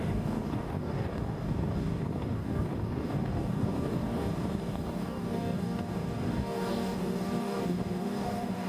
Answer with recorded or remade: remade